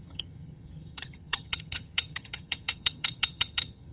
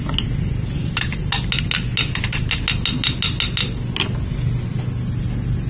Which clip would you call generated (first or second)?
first